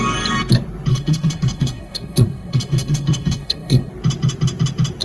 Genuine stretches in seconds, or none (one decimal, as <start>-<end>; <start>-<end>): 0.0-0.9; 3.9-5.0